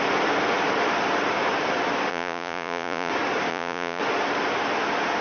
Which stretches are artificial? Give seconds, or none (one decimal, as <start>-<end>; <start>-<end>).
2.1-3.1; 3.5-4.0